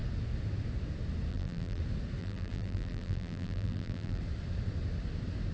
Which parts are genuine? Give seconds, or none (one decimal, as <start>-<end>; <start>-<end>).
0.0-1.3; 1.8-2.2; 4.2-5.5